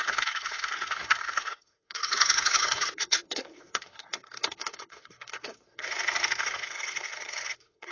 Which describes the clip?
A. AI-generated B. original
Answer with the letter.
A